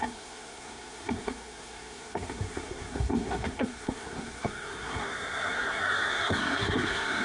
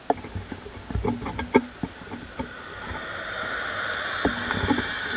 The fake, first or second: first